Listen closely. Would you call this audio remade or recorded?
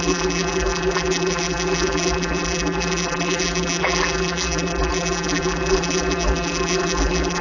remade